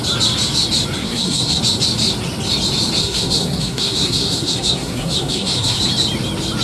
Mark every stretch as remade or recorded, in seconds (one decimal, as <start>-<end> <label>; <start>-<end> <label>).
0.0-1.0 recorded; 1.0-1.6 remade; 1.6-3.0 recorded; 3.0-5.8 remade; 5.8-6.6 recorded